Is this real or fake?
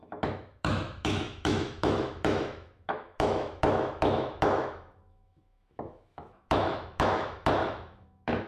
fake